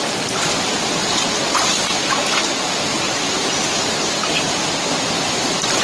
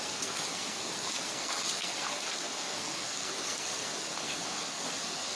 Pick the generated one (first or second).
second